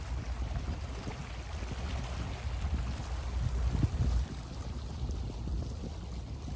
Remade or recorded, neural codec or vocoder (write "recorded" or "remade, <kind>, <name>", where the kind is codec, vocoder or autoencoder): recorded